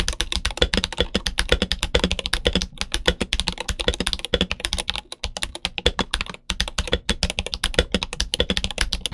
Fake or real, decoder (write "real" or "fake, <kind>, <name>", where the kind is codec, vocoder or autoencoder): real